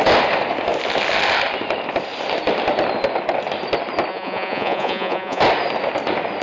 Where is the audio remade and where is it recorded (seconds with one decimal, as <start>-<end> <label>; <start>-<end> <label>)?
0.0-4.1 recorded; 4.1-5.4 remade; 5.4-6.4 recorded